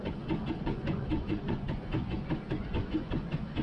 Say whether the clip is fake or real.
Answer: fake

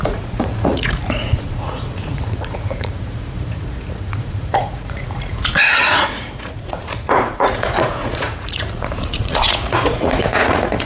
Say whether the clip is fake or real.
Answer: fake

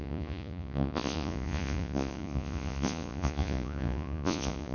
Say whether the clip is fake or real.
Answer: fake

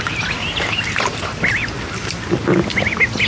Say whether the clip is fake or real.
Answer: real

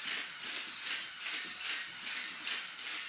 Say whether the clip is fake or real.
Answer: real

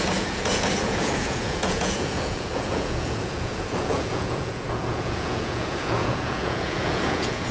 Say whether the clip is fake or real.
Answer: fake